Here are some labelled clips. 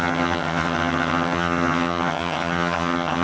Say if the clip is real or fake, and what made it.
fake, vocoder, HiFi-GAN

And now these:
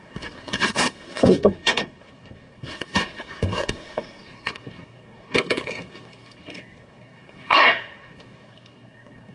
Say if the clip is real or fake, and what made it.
fake, codec, SNAC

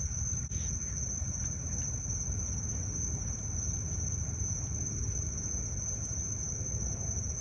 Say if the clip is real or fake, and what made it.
real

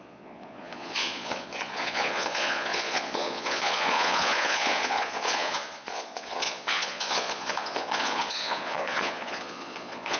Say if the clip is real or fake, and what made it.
fake, vocoder, Vocos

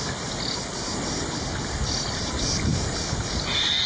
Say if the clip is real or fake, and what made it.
real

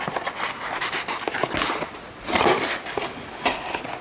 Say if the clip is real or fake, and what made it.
real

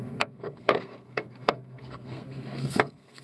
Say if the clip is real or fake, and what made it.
fake, codec, SNAC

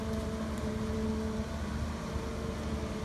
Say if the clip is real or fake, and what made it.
real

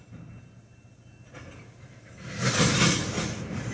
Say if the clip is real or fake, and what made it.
real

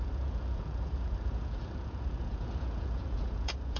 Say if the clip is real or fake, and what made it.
fake, vocoder, Vocos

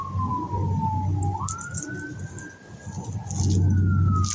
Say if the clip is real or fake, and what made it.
real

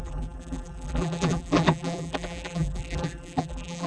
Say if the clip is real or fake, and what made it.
fake, vocoder, BigVGAN v2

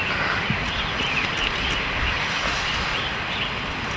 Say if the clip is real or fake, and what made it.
real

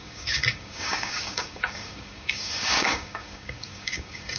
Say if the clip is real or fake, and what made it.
fake, codec, DAC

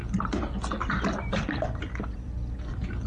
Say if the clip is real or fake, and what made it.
real